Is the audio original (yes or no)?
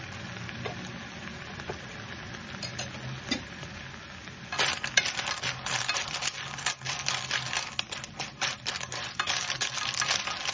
yes